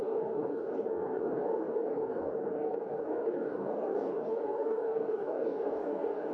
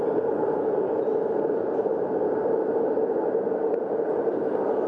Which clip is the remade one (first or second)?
first